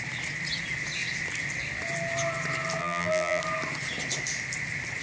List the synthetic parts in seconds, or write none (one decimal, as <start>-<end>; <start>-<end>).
2.8-3.4